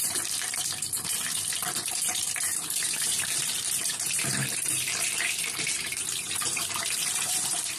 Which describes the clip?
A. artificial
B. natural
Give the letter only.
A